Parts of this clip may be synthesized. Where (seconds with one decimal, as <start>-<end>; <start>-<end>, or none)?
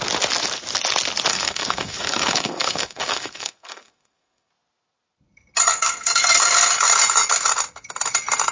1.3-4.5; 5.7-6.7